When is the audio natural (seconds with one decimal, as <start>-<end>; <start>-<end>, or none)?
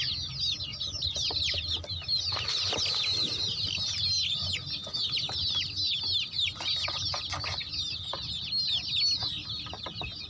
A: 0.0-0.7; 2.8-10.3